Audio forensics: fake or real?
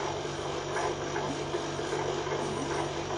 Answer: real